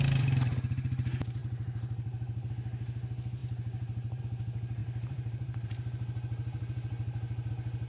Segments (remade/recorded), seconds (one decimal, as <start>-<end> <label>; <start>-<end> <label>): 0.0-1.4 recorded; 1.4-2.5 remade; 2.5-3.4 recorded; 3.4-4.2 remade; 4.2-4.8 recorded; 4.8-7.5 remade; 7.5-7.9 recorded